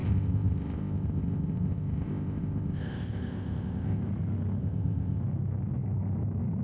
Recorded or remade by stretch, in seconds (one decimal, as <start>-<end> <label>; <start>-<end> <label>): 0.0-4.0 remade; 4.0-4.6 recorded; 4.6-5.2 remade; 5.2-6.6 recorded